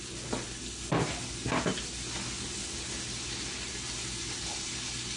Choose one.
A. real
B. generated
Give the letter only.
A